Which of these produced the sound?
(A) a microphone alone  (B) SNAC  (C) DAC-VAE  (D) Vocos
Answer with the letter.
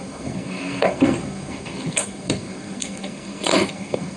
B